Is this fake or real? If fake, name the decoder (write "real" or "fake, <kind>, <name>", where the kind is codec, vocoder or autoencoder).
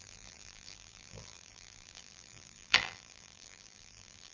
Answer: fake, vocoder, BigVGAN v2